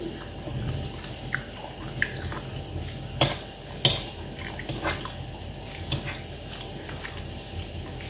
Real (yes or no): yes